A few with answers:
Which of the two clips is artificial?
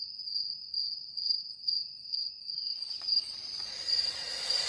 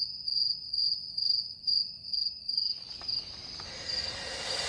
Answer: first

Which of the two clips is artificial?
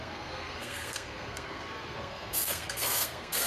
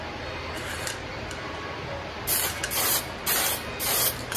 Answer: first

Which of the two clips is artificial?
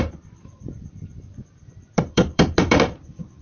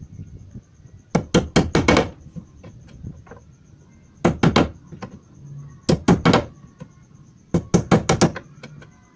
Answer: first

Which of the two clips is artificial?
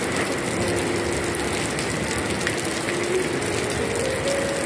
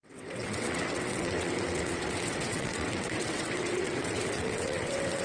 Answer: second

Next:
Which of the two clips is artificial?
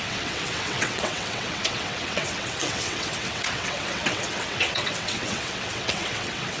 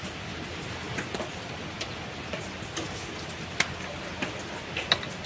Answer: first